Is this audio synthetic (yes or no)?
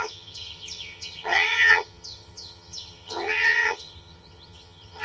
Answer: yes